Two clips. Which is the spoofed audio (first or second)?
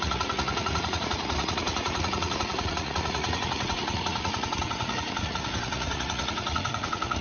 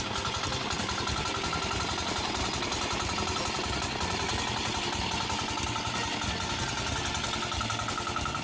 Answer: first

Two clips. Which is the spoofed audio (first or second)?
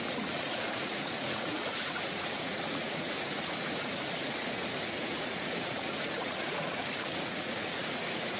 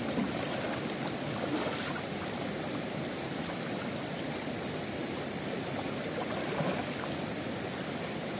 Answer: first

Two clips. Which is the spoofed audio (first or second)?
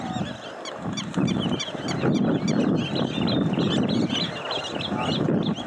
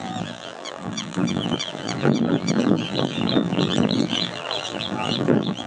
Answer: second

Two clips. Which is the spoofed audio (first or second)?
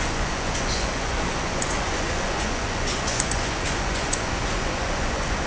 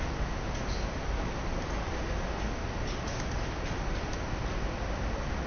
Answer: first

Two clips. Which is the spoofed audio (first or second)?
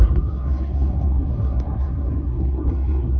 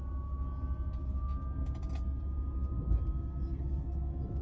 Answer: first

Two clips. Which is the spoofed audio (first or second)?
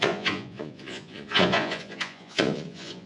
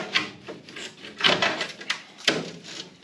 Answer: first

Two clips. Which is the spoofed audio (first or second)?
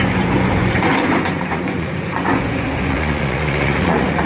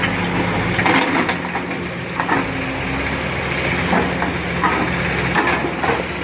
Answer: first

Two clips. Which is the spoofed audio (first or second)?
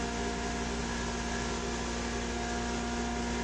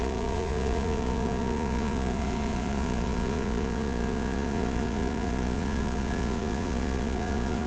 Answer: second